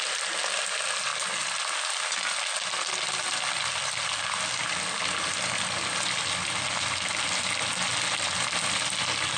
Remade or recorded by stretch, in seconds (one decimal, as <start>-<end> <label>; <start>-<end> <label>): 0.0-9.4 recorded

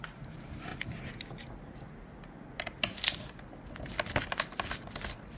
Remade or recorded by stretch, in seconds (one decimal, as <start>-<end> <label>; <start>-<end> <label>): 0.0-5.4 recorded

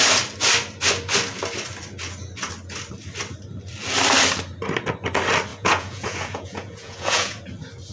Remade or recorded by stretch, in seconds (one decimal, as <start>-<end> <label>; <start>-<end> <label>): 0.0-5.5 recorded; 5.5-7.4 remade; 7.4-7.9 recorded

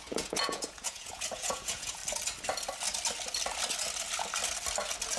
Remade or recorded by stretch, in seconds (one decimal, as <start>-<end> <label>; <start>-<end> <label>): 0.0-2.0 remade; 2.0-5.2 recorded